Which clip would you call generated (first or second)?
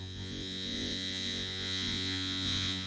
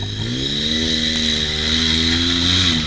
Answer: first